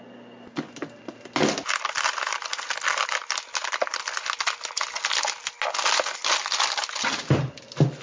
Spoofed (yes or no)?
no